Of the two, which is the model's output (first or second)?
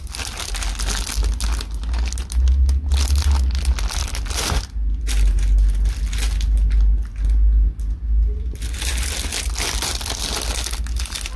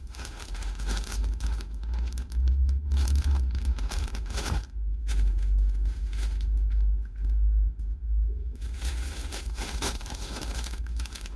second